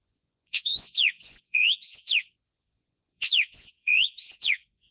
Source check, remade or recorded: remade